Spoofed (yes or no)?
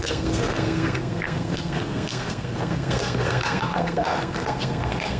yes